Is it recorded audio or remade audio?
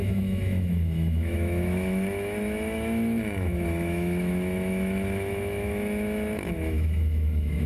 remade